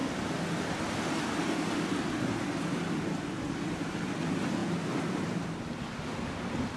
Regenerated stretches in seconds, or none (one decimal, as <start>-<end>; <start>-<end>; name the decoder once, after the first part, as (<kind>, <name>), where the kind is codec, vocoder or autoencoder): none